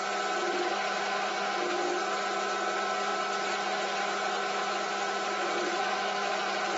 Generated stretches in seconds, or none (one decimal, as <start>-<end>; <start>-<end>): 5.8-6.3

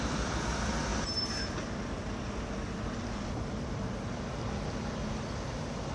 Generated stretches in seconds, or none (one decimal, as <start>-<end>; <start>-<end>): none

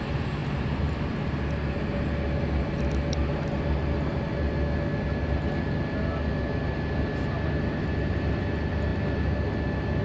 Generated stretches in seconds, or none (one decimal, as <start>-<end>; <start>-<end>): none

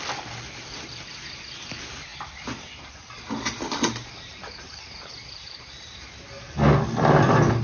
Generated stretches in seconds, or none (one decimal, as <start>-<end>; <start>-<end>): 4.3-6.1

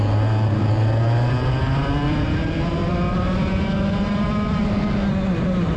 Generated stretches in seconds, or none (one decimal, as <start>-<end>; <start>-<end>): none

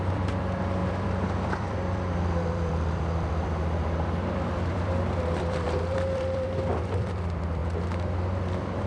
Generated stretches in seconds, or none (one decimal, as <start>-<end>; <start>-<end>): 0.0-7.6

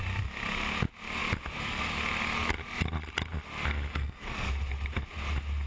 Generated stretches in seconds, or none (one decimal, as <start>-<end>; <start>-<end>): 3.9-4.5

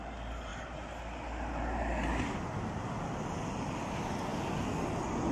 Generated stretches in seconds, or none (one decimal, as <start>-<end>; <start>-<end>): none